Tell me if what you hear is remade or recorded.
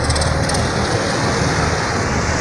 recorded